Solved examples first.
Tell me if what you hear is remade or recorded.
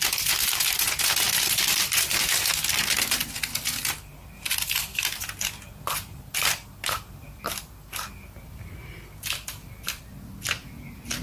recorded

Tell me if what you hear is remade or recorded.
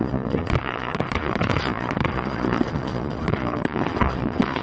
remade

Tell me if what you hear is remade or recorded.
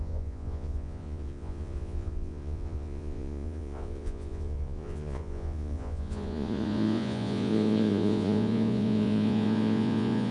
remade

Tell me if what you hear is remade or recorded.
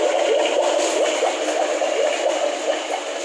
recorded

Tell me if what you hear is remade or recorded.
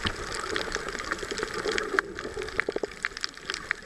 recorded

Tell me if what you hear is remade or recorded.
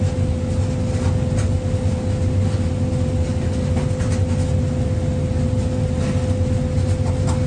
recorded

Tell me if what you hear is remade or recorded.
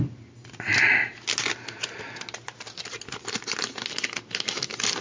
recorded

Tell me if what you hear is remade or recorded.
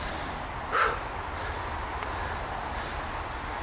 recorded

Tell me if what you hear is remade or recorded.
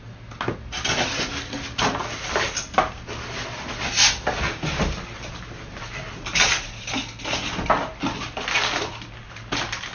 recorded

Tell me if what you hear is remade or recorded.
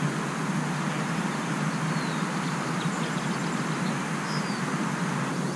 recorded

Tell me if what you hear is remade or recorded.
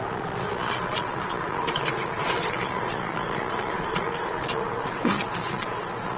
remade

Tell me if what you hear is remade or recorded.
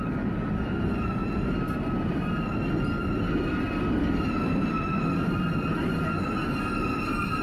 recorded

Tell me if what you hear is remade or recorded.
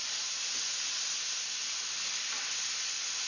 recorded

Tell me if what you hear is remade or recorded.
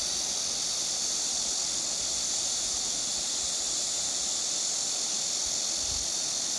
recorded